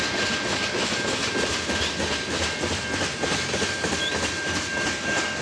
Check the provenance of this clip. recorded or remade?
recorded